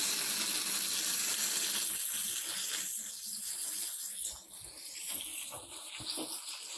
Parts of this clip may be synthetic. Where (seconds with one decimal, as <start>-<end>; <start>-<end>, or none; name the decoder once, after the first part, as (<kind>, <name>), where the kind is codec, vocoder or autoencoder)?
5.3-5.9 (vocoder, BigVGAN v2)